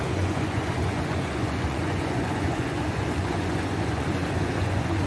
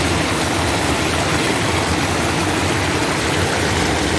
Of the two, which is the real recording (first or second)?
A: second